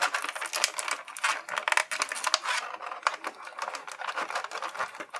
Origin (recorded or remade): recorded